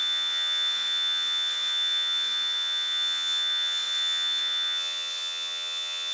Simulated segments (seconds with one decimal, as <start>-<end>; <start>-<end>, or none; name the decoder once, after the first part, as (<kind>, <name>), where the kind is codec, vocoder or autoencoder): 0.0-6.1 (vocoder, WaveNeXt)